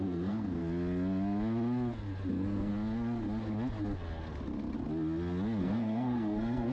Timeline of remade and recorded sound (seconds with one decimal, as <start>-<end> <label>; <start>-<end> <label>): 0.0-0.6 remade; 0.6-2.3 recorded; 2.3-2.7 remade; 2.7-5.6 recorded; 5.6-6.7 remade